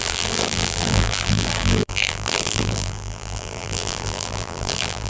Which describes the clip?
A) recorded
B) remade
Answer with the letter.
B